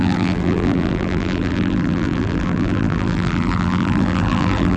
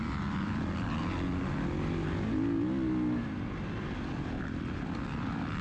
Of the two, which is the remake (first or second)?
first